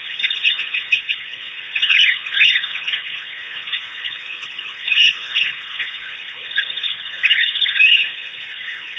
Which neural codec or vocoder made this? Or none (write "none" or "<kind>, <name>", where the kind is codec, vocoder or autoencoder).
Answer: codec, HILCodec